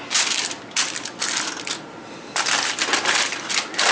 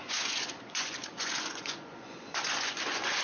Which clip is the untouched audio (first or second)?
first